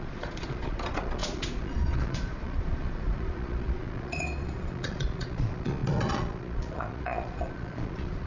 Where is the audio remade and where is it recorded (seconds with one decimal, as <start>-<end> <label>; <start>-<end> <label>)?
0.0-8.3 remade